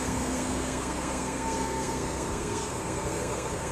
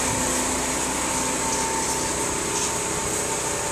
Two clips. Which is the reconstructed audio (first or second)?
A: first